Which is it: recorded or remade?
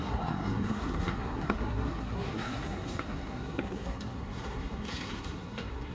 remade